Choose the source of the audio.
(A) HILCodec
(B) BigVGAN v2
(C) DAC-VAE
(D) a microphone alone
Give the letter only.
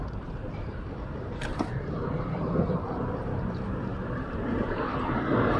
B